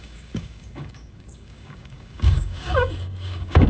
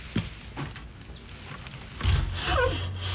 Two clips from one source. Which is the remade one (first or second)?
first